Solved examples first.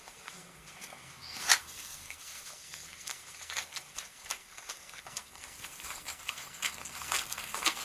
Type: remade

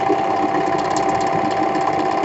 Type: recorded